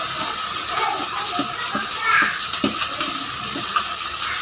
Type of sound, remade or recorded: recorded